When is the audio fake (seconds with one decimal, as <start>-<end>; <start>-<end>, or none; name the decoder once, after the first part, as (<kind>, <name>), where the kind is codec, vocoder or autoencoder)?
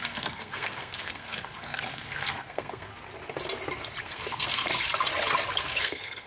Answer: 0.0-2.9 (codec, SNAC); 4.0-4.7; 5.6-6.3